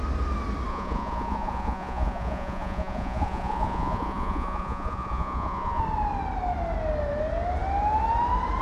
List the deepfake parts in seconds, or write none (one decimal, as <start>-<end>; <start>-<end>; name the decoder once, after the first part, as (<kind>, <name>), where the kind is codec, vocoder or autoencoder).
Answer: 0.7-5.8 (vocoder, Vocos)